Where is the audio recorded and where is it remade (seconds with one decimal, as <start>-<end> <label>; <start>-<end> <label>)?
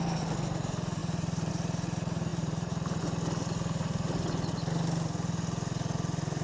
0.0-1.0 recorded; 1.0-1.5 remade; 1.5-2.3 recorded; 2.3-3.0 remade; 3.0-6.4 recorded